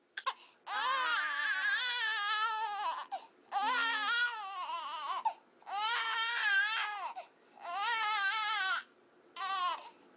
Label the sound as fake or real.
real